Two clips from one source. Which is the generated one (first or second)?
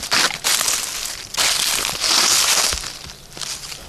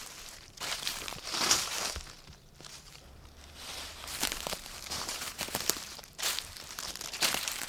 second